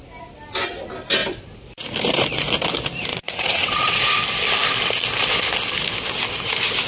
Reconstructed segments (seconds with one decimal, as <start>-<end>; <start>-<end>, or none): 3.1-4.0